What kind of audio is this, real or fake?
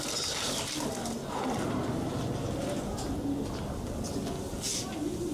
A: real